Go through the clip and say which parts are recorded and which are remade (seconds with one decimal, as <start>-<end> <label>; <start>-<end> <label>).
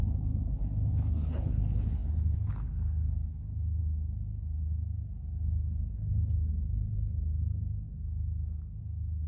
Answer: 0.0-3.8 remade; 3.8-4.4 recorded; 4.4-6.5 remade; 6.5-8.8 recorded; 8.8-9.3 remade